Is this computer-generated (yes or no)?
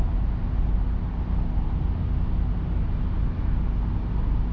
no